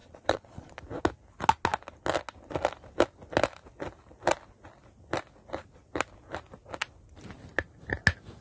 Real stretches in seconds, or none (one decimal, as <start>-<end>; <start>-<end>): 0.7-8.4